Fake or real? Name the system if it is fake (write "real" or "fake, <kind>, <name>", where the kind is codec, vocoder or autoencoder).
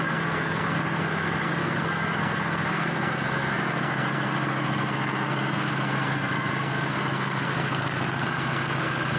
fake, codec, SNAC